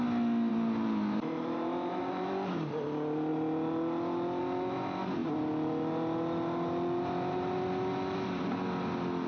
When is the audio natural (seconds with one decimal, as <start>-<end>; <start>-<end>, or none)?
0.0-0.5; 2.3-9.3